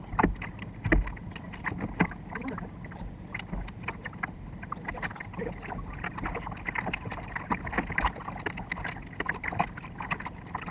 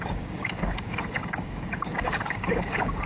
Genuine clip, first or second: first